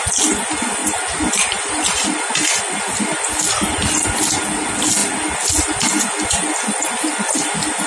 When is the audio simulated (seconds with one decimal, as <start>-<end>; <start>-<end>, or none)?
none